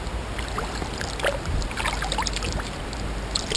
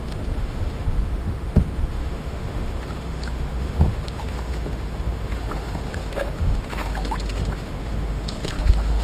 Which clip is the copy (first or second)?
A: second